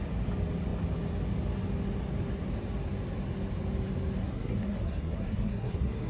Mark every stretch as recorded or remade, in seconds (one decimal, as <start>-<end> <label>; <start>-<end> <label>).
0.0-4.2 recorded; 4.2-6.1 remade